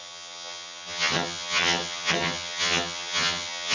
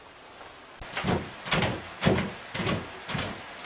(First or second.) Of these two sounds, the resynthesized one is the first